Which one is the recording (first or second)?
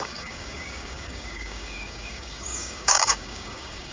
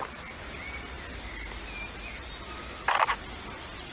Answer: second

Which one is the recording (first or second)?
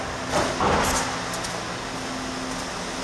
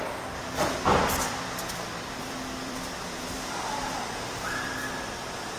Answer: first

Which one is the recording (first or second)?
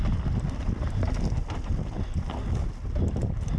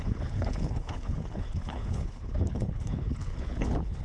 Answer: first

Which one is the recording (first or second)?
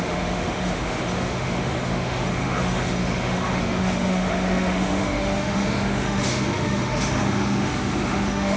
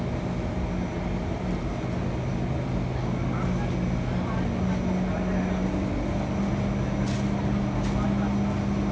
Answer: second